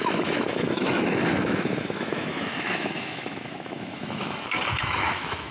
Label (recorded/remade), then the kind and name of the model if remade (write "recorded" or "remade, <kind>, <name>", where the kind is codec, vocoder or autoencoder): remade, autoencoder, DAC-VAE